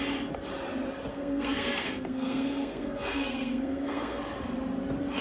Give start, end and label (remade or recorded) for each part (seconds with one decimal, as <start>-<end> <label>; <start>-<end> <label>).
0.0-1.1 recorded; 1.1-4.2 remade; 4.2-5.2 recorded